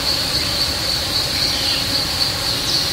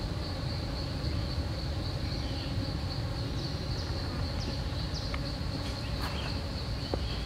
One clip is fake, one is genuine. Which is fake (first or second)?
first